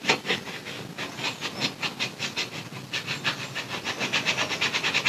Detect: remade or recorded recorded